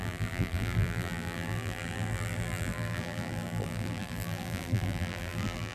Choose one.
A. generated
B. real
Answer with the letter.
A